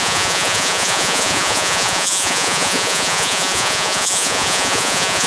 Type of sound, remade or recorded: remade